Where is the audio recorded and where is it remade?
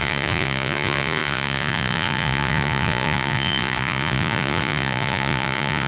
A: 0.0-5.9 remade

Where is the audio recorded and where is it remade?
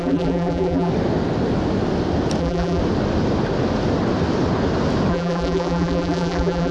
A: 0.0-0.9 remade; 0.9-2.4 recorded; 2.4-2.8 remade; 2.8-5.1 recorded; 5.1-6.7 remade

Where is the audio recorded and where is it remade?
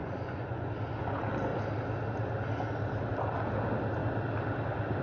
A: 0.0-0.7 remade; 0.7-5.0 recorded